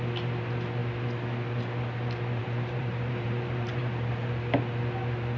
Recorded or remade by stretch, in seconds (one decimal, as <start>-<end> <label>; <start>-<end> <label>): 0.0-2.4 recorded; 2.4-4.1 remade; 4.1-5.4 recorded